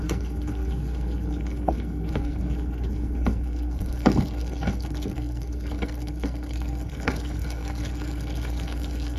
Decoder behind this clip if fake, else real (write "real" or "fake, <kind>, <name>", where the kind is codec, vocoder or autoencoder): fake, codec, SNAC